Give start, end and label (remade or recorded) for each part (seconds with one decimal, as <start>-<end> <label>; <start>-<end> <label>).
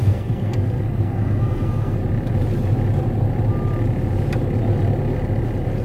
0.0-2.0 remade; 2.0-5.8 recorded